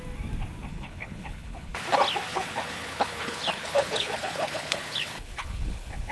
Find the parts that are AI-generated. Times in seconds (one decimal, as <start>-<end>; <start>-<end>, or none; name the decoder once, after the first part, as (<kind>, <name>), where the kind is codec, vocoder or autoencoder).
0.7-1.8 (codec, HILCodec); 2.3-6.1